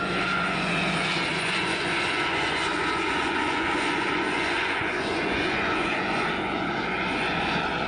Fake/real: fake